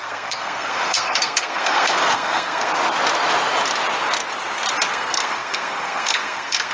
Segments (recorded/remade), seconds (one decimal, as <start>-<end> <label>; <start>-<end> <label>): 0.0-2.7 remade; 2.7-4.9 recorded; 4.9-6.7 remade